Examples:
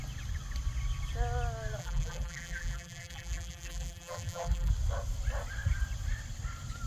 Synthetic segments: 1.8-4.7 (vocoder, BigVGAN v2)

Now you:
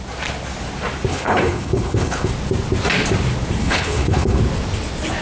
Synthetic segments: 1.1-2.3 (codec, HILCodec); 3.6-4.4

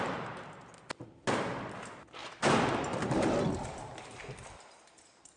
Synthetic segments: 2.2-5.4 (vocoder, BigVGAN v2)

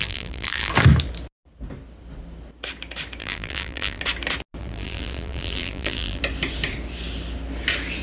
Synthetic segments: 0.0-0.7 (vocoder, BigVGAN v2); 3.2-4.0; 4.6-6.2

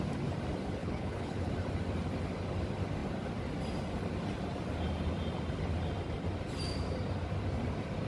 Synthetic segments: 0.8-1.5 (codec, HILCodec)

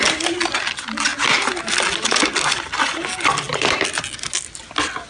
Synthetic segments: none

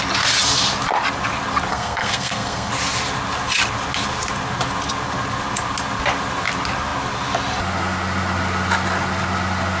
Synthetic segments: 1.7-2.7 (codec, SNAC)